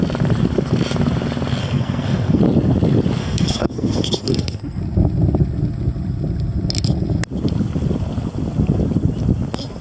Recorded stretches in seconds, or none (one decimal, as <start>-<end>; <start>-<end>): 0.0-1.6; 2.4-3.2; 4.8-9.8